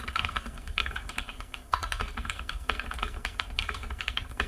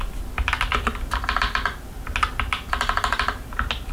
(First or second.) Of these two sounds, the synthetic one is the first